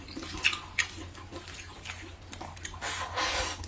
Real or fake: real